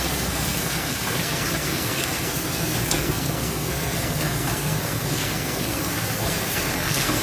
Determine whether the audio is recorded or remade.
remade